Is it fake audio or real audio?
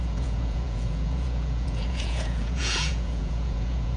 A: fake